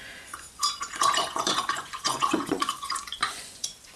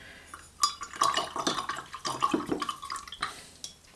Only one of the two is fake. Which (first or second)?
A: first